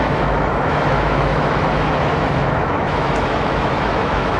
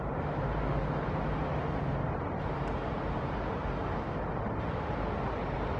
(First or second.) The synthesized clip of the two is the first